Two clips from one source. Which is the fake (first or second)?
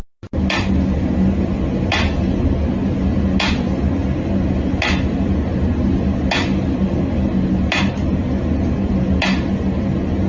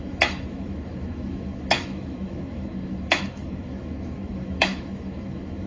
second